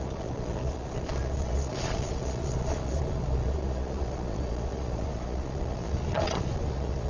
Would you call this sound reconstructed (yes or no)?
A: yes